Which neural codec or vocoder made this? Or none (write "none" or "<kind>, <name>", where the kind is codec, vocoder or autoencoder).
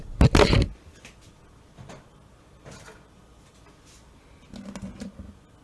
none